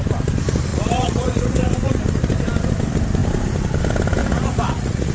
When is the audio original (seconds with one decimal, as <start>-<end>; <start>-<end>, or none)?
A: 0.0-0.7; 2.0-4.2